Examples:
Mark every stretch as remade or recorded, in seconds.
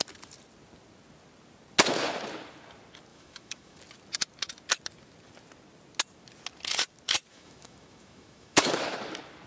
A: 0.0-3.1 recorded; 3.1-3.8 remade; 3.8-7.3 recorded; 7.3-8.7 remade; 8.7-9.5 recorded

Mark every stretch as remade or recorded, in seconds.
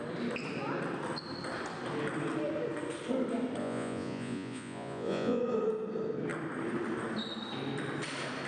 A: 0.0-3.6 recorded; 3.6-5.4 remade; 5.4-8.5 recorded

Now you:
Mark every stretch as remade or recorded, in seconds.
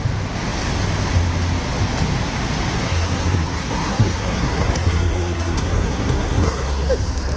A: 0.0-2.8 recorded; 2.8-6.9 remade; 6.9-7.4 recorded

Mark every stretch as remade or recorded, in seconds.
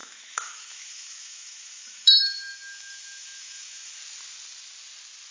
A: 0.0-4.0 remade; 4.0-5.3 recorded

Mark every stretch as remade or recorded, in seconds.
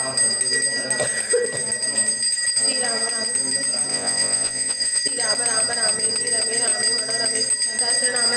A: 0.0-3.9 recorded; 3.9-5.0 remade; 5.0-8.4 recorded